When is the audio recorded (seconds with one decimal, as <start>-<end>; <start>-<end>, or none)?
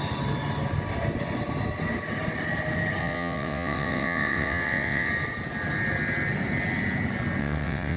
0.0-3.0; 5.1-7.4